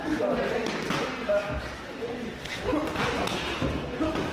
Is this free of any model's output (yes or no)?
yes